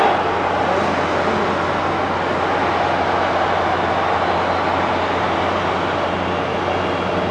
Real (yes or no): yes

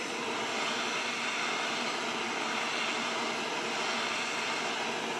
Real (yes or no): yes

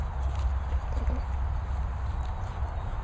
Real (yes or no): yes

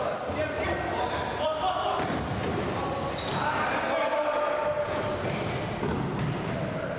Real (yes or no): yes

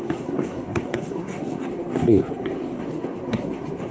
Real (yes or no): no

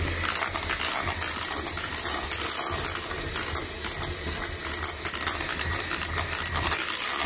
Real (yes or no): yes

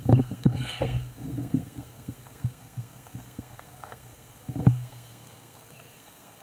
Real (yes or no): no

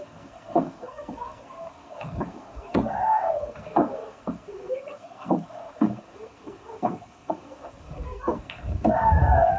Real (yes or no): no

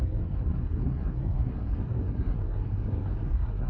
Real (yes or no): no